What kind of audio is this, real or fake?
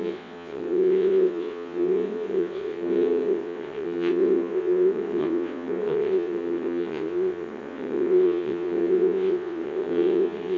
fake